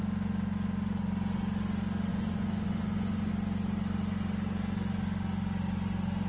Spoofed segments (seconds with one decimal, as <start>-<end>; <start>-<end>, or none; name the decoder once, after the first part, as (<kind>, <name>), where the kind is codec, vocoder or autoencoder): 2.1-3.3 (vocoder, Vocos)